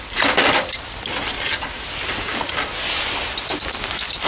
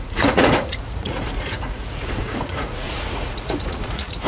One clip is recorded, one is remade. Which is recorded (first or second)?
first